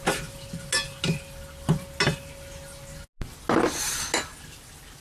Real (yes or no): yes